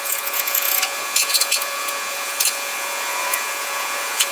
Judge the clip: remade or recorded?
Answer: remade